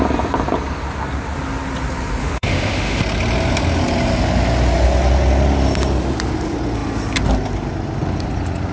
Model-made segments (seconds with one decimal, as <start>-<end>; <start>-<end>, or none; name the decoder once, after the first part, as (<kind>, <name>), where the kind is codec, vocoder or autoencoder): 2.2-3.0 (autoencoder, DAC-VAE)